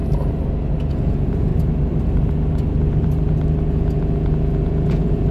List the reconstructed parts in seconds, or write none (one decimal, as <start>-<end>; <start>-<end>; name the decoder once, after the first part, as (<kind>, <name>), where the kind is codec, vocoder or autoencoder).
0.9-1.5 (vocoder, Vocos); 3.7-5.3